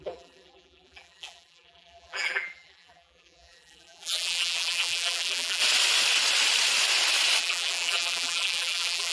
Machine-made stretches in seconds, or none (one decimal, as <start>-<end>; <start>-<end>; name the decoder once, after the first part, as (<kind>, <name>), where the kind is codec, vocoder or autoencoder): 0.0-5.6 (vocoder, BigVGAN v2); 7.4-9.1